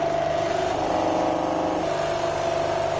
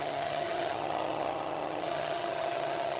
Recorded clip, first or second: first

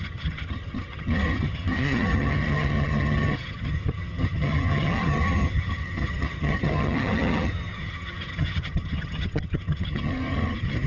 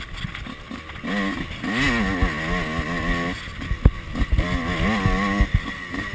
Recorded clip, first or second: second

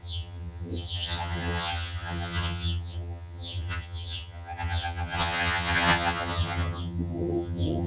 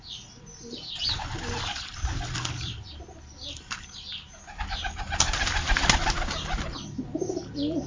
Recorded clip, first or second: second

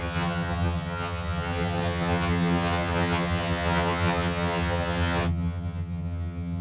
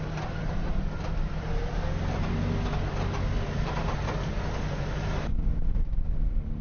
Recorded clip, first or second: second